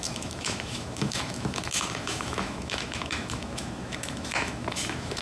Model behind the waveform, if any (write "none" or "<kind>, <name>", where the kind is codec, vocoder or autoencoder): autoencoder, DAC-VAE